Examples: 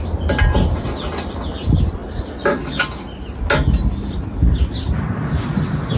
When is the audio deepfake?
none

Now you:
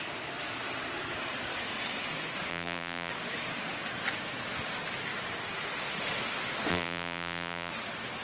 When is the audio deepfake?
2.5-3.1 (vocoder, BigVGAN v2); 6.7-7.7

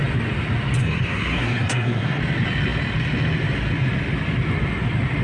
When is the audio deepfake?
0.8-2.2 (codec, SNAC)

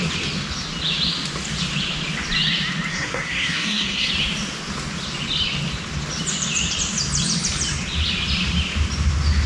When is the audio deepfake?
2.9-4.1 (codec, SNAC)

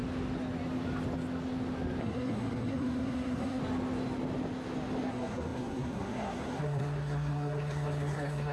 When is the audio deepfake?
2.0-3.6 (codec, SNAC); 5.1-8.5

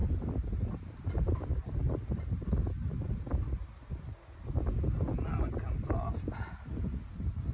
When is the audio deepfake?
none

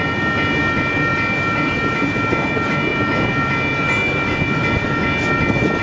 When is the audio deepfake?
none

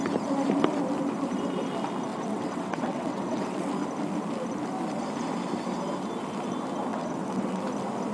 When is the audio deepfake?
2.1-3.7 (vocoder, WaveNeXt); 6.9-7.6